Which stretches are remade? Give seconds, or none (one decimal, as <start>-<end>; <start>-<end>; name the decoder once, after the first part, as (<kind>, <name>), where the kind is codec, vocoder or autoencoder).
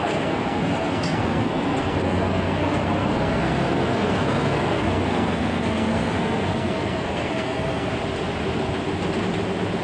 0.0-7.9 (codec, SNAC)